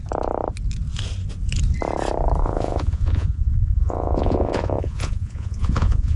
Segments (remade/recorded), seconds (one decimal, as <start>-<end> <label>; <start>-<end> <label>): 0.0-2.4 recorded; 2.4-6.2 remade